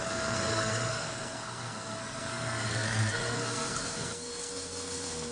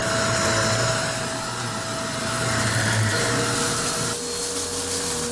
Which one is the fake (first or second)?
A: first